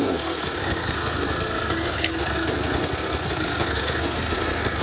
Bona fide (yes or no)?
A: no